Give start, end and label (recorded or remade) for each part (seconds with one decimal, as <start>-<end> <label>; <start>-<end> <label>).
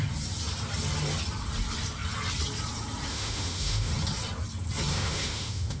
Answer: 0.0-3.1 recorded; 3.1-3.9 remade; 3.9-4.9 recorded; 4.9-5.8 remade